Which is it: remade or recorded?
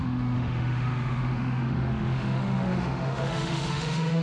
remade